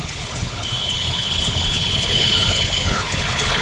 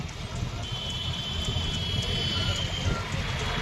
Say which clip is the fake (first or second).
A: first